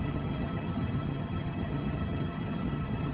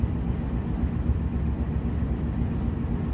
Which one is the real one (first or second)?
second